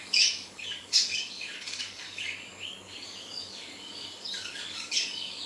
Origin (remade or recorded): remade